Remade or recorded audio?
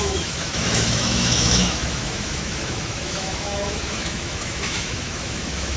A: remade